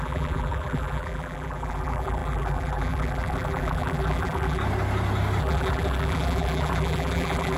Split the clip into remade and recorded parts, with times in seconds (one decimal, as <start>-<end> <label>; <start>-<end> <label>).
0.0-4.6 remade; 4.6-5.4 recorded; 5.4-7.6 remade